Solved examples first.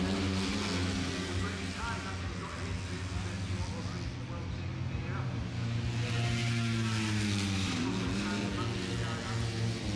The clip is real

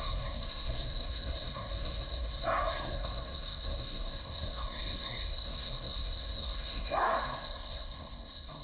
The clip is fake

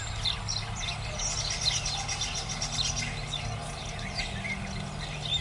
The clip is real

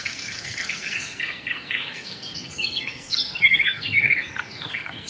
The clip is fake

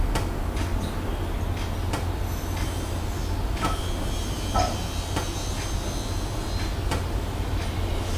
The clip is real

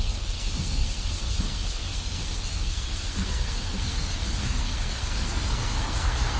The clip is fake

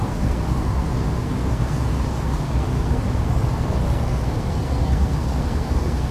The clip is fake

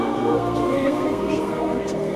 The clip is fake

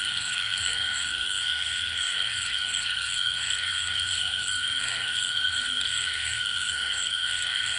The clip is fake